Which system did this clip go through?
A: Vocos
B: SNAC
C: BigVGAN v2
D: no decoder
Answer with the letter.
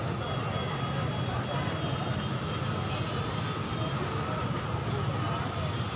D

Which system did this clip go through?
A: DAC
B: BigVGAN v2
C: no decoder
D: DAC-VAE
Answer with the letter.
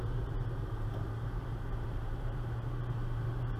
B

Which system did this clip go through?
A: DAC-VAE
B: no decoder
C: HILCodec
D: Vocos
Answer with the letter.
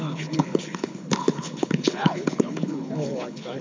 C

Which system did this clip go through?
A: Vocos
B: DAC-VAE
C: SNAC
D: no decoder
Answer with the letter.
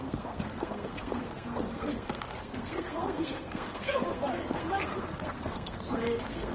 C